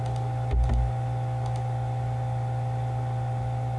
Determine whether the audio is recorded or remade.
recorded